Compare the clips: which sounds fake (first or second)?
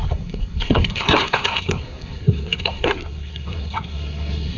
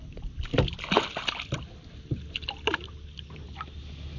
first